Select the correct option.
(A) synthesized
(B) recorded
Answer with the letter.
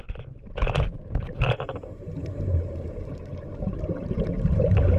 A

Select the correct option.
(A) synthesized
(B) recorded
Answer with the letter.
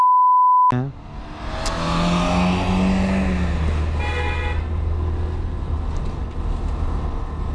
B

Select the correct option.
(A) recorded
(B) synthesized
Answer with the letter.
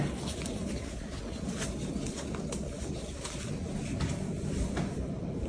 A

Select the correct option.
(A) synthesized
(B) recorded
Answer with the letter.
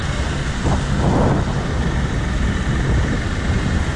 B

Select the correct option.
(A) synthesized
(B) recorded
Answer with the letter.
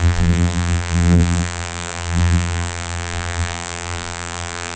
A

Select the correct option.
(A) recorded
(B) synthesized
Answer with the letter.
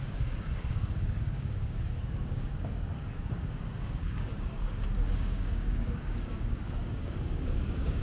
B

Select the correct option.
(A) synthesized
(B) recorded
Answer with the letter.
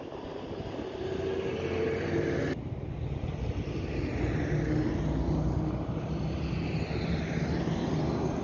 B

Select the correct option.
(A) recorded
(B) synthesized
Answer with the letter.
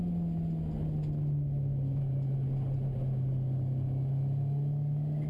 A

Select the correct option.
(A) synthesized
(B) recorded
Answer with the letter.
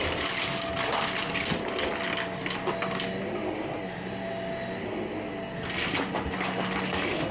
B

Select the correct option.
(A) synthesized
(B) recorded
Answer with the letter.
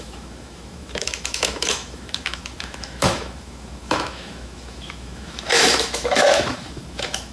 A